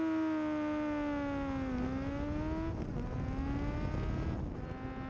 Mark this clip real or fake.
real